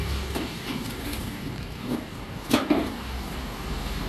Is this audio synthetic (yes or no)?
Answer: yes